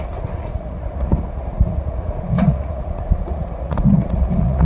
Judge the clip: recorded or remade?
remade